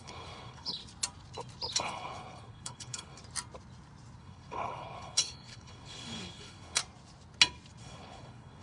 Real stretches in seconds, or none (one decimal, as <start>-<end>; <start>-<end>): 0.8-1.8; 3.2-4.2; 6.8-7.8